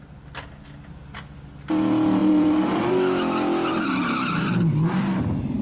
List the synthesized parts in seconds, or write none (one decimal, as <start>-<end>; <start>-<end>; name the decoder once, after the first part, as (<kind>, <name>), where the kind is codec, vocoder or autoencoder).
2.2-2.9 (vocoder, BigVGAN v2); 3.7-5.6